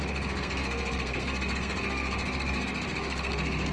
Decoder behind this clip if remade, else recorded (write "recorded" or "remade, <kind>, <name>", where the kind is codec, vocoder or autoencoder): remade, codec, SNAC